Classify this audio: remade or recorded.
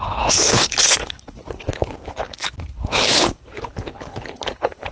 remade